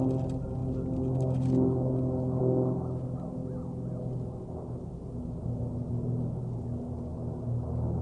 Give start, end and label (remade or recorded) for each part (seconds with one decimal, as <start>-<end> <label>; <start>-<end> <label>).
0.0-8.0 recorded